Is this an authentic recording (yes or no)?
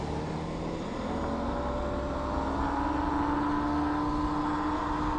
yes